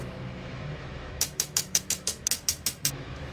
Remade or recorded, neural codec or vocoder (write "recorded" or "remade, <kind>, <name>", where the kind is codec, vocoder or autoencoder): remade, autoencoder, DAC-VAE